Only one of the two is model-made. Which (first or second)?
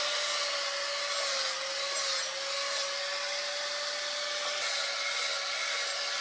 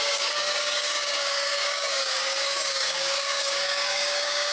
second